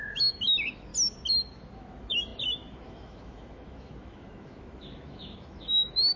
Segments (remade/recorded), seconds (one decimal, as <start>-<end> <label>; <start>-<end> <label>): 0.0-0.9 remade; 0.9-1.5 recorded; 1.5-6.2 remade